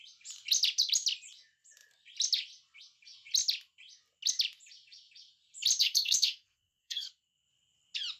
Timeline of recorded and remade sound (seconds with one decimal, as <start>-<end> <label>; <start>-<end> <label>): 0.0-5.8 recorded; 5.8-7.1 remade; 7.1-8.2 recorded